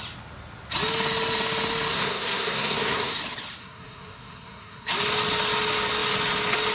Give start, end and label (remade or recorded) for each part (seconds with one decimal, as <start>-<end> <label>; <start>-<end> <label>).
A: 0.0-1.9 recorded; 1.9-3.2 remade; 3.2-3.6 recorded; 3.6-4.9 remade; 4.9-6.7 recorded